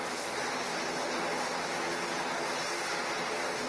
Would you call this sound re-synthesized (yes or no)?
no